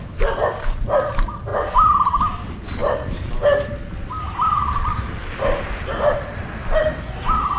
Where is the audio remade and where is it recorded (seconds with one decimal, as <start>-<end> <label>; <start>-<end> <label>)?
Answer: 0.0-1.5 recorded; 1.5-2.2 remade; 2.2-2.8 recorded; 2.8-3.4 remade; 3.4-4.9 recorded; 4.9-6.5 remade; 6.5-7.6 recorded